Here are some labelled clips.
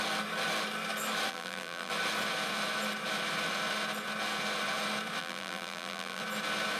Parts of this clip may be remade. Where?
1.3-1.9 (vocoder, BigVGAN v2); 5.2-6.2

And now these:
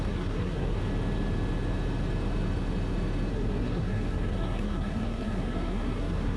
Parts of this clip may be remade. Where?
0.0-0.8 (codec, SNAC); 3.3-6.4

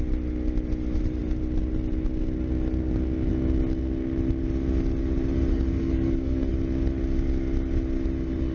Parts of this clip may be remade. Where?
5.5-6.5 (codec, SNAC)

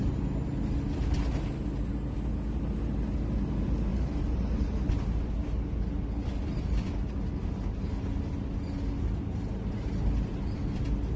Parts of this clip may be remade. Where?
3.9-4.9 (vocoder, BigVGAN v2)

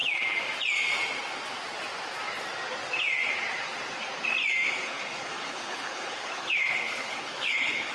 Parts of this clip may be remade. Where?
4.7-7.9 (codec, HILCodec)

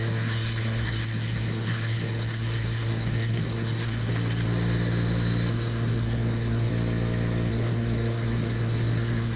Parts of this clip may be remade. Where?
0.0-4.1 (codec, SNAC); 5.5-6.7; 7.5-9.4

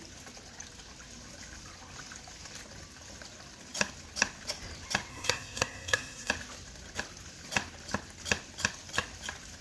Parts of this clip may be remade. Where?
5.1-6.3 (codec, SNAC)

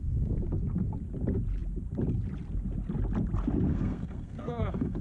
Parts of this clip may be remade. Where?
3.7-5.0 (codec, SNAC)